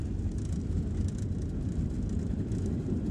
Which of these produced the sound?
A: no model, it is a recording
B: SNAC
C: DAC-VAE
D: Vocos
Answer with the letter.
A